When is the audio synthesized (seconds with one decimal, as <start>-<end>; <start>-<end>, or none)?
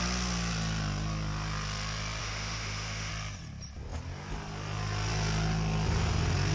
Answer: 2.2-3.1